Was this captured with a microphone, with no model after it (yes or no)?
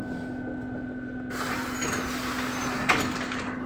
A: yes